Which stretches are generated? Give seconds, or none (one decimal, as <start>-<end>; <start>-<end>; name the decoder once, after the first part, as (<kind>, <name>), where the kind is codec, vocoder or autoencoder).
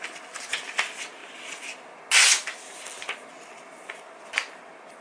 none